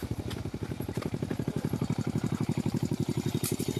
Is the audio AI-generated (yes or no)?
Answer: yes